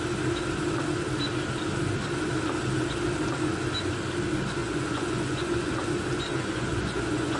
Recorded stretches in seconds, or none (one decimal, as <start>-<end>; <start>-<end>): 0.0-4.6; 5.7-6.3